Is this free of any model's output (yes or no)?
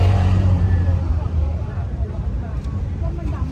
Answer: no